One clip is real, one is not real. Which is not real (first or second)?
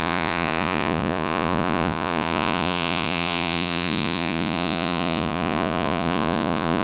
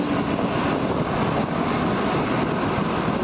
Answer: first